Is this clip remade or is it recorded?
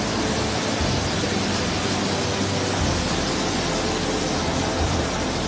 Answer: recorded